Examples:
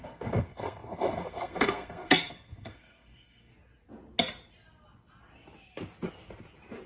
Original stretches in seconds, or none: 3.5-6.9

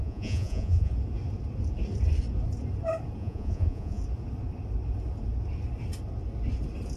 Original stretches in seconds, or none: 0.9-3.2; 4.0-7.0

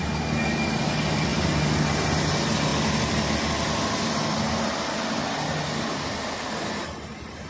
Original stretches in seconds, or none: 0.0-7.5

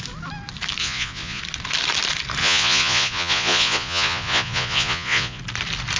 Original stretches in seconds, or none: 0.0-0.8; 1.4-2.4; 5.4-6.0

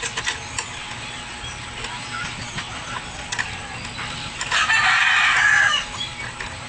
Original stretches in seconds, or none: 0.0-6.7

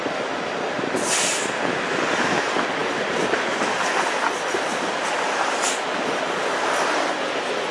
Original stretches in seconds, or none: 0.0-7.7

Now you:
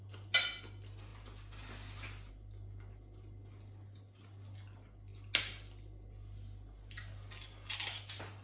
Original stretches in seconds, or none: 0.0-8.4